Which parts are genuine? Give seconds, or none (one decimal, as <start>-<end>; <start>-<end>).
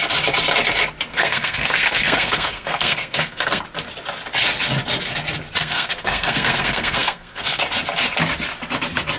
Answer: 0.0-1.1; 3.6-5.6; 7.6-9.2